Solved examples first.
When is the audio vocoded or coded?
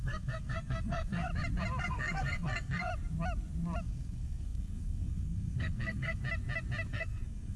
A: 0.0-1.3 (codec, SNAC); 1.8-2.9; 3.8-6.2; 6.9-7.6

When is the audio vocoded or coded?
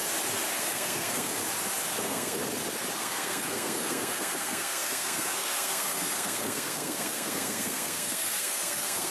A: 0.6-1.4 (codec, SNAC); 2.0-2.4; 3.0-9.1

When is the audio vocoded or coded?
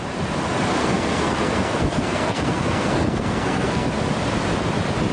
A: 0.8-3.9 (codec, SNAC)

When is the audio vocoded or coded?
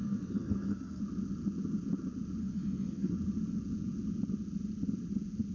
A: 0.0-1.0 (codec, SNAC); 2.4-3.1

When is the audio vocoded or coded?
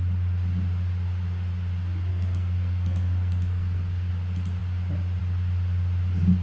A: 2.1-4.1 (codec, SNAC)